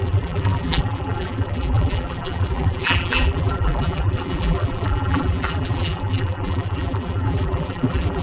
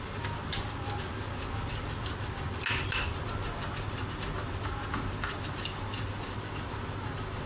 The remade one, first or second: first